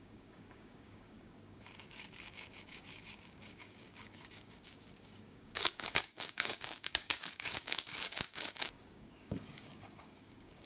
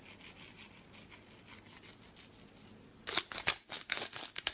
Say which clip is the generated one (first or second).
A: first